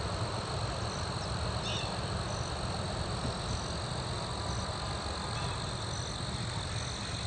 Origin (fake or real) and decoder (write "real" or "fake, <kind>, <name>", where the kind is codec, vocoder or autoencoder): real